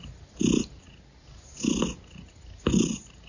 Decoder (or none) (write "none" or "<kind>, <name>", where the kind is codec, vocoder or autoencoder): none